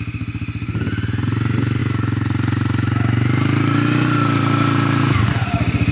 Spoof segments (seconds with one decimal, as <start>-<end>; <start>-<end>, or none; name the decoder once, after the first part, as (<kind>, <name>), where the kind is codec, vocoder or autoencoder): 1.8-5.3 (vocoder, BigVGAN v2)

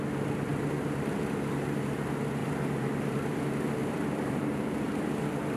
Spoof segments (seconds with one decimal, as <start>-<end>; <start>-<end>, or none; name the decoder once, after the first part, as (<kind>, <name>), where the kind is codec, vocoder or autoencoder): 0.5-1.8 (vocoder, BigVGAN v2); 2.4-3.4; 3.8-5.1

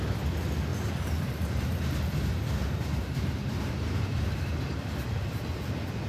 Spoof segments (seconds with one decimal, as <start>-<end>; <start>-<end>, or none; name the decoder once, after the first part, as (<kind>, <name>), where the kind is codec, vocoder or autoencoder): 0.7-2.1 (vocoder, BigVGAN v2); 2.6-4.2

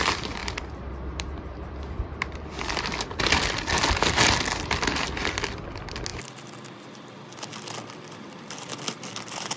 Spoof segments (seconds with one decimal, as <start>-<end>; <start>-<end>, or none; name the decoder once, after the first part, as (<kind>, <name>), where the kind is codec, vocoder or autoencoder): 0.4-2.7 (vocoder, BigVGAN v2)

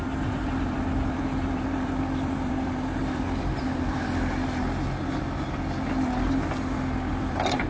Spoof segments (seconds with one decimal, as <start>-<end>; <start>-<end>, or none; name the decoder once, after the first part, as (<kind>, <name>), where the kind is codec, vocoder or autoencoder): 0.0-4.4 (vocoder, BigVGAN v2); 7.1-7.7

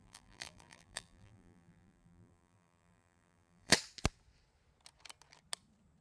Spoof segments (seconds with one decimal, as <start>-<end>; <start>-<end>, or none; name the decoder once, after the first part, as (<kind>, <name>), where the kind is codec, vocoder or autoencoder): 0.0-3.7 (vocoder, BigVGAN v2)

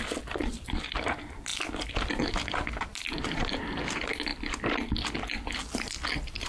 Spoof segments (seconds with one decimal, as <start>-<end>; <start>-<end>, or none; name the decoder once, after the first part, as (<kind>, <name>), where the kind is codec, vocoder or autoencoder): 0.5-1.1 (vocoder, BigVGAN v2); 2.9-3.8